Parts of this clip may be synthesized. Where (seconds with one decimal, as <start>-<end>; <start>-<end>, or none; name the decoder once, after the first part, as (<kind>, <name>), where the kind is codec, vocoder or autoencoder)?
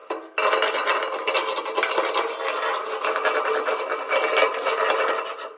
none